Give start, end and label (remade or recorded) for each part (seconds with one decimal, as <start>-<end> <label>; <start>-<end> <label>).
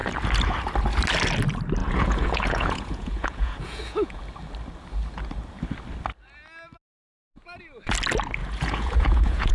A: 0.0-1.8 recorded; 1.8-4.2 remade; 4.2-8.4 recorded; 8.4-9.5 remade